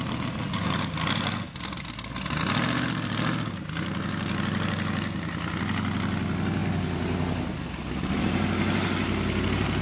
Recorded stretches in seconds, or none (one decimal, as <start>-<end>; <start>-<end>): 0.0-9.8